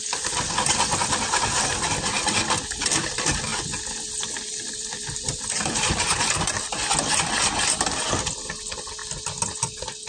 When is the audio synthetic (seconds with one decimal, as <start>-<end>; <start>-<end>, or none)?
3.5-6.1